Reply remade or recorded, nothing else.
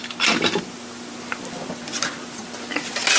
recorded